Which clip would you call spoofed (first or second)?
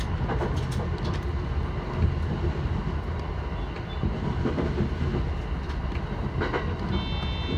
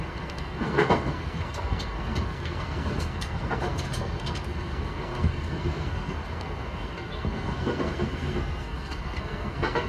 second